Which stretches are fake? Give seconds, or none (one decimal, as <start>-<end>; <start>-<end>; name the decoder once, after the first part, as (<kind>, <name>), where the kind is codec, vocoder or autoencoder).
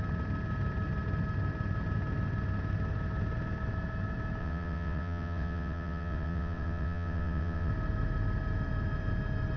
4.4-7.7 (vocoder, WaveNeXt)